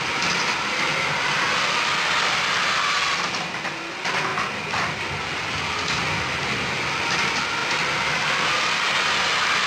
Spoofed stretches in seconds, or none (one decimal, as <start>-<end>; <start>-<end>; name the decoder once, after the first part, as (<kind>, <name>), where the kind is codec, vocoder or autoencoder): none